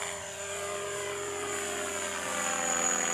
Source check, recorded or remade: recorded